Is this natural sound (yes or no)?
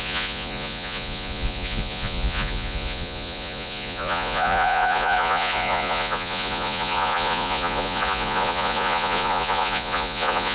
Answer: no